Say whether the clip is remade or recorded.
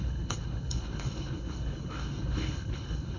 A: remade